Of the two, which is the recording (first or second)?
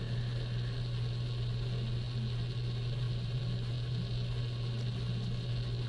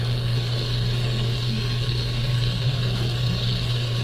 first